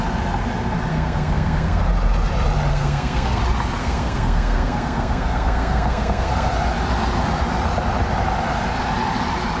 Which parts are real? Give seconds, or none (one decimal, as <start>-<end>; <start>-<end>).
0.0-0.9; 1.8-2.7; 3.4-3.8; 6.5-9.6